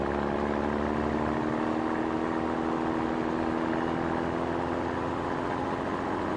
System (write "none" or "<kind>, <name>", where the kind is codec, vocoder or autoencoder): none